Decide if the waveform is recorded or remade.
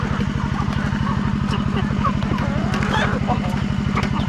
recorded